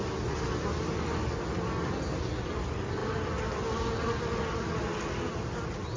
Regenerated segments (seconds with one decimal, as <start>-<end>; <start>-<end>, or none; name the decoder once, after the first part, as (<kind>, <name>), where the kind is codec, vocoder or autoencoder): none